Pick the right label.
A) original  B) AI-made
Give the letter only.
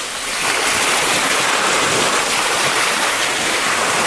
A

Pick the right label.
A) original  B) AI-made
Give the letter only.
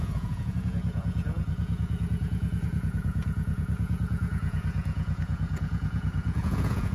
B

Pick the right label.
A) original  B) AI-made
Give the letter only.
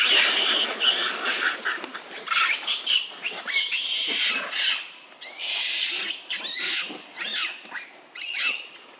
A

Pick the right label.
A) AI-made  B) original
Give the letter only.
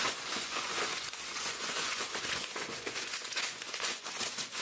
A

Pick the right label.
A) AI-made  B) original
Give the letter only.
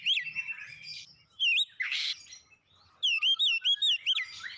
B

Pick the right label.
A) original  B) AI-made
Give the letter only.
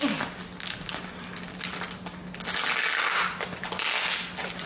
A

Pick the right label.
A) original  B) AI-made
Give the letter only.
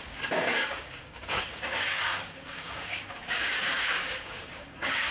B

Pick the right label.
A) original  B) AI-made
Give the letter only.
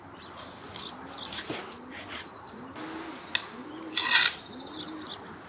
A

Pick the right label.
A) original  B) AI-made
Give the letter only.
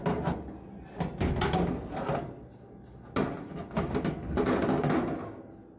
A